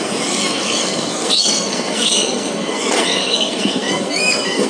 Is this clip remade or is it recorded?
remade